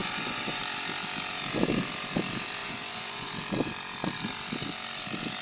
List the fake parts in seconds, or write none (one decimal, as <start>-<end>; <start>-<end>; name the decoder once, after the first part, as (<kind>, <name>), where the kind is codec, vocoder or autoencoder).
0.0-0.6 (vocoder, Vocos); 2.6-3.3